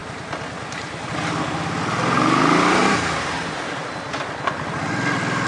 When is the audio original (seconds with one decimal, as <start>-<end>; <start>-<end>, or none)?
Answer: 1.1-2.8; 3.9-5.5